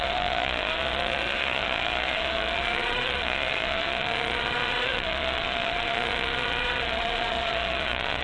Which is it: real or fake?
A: fake